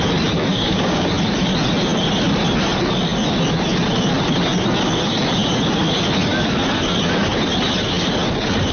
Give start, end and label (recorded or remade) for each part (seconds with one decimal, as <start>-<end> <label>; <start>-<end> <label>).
0.0-0.5 recorded; 0.5-1.1 remade; 1.1-8.7 recorded